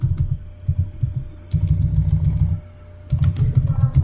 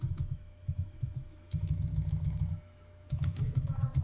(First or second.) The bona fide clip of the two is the first